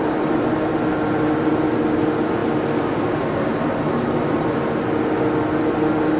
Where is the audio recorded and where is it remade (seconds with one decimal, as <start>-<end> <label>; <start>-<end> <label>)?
0.0-1.5 remade; 1.5-6.2 recorded